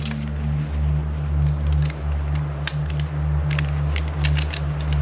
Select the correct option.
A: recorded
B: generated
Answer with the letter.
A